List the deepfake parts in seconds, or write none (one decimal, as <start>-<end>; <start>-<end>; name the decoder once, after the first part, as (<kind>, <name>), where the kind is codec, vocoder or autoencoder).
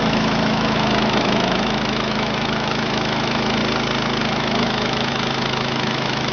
0.0-3.6 (autoencoder, DAC-VAE); 4.2-6.3